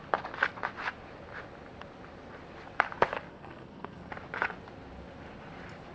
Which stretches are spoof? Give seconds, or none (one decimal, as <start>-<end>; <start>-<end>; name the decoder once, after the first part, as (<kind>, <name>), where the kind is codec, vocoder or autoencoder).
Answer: 3.3-4.1 (codec, SNAC)